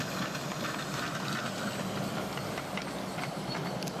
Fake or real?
real